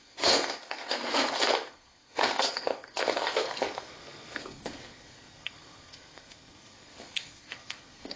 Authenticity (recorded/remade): remade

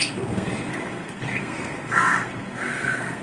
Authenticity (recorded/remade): remade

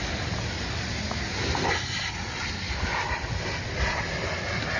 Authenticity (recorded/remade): recorded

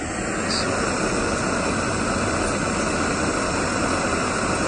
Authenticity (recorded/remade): recorded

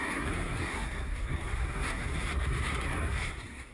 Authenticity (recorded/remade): remade